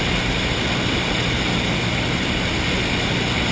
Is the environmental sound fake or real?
real